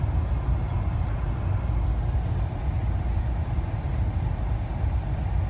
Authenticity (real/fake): real